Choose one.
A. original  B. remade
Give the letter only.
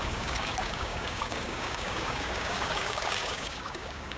B